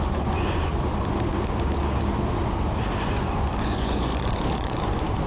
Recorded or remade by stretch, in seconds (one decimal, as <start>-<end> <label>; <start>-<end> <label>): 0.0-0.7 remade; 0.7-3.0 recorded; 3.0-5.3 remade